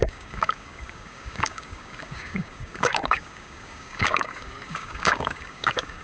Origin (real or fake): fake